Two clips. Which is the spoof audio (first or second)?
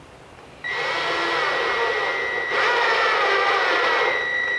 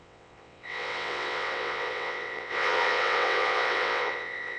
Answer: second